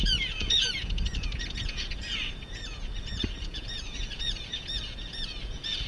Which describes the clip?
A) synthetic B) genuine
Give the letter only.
A